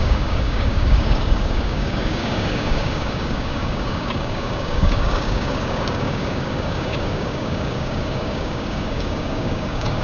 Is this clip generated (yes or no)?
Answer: yes